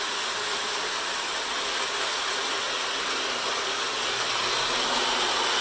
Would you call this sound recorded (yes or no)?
yes